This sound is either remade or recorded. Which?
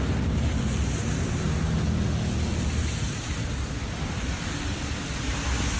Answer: recorded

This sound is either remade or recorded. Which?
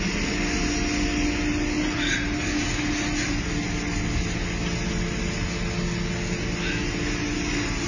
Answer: recorded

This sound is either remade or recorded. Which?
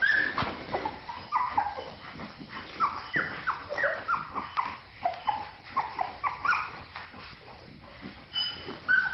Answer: remade